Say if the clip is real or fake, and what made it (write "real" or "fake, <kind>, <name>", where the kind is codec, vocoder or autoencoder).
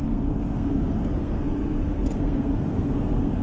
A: fake, codec, SNAC